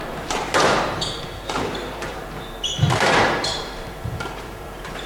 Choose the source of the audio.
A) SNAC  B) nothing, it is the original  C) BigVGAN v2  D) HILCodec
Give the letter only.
C